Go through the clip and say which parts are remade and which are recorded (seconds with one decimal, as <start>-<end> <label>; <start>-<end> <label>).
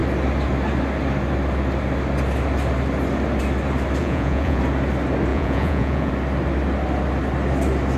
0.0-4.0 recorded; 4.0-4.6 remade; 4.6-5.3 recorded; 5.3-6.1 remade; 6.1-8.0 recorded